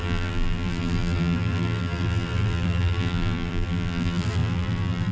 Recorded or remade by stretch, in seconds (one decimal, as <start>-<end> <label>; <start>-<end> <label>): 0.0-5.1 remade